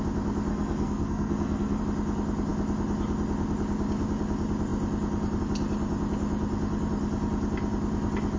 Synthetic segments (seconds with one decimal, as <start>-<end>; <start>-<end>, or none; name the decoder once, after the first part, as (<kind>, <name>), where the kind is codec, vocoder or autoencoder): 0.5-1.8 (codec, SNAC)